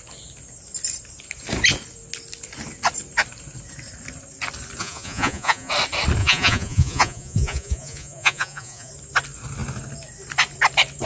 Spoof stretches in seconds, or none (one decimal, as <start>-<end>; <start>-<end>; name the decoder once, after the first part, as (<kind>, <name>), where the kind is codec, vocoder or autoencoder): 4.8-5.7 (vocoder, Vocos); 6.2-8.9